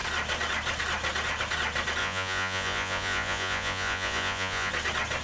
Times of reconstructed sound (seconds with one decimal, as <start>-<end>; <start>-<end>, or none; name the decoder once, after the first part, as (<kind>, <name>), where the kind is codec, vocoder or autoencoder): 2.0-4.7 (vocoder, Vocos)